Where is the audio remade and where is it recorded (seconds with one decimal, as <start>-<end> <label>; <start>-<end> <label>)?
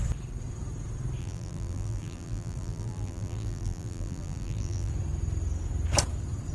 0.0-1.2 recorded; 1.2-4.9 remade; 4.9-6.5 recorded